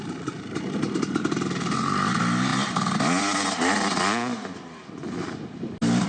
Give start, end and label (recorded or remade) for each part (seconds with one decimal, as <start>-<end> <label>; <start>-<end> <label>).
0.0-6.1 recorded